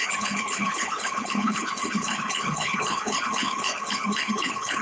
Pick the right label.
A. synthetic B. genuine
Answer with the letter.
A